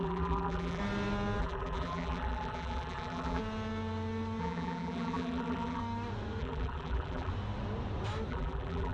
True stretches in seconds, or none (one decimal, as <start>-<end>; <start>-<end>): 0.8-1.4; 3.4-4.4; 5.8-6.4; 7.3-8.3